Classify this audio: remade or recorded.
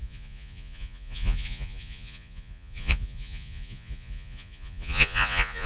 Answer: remade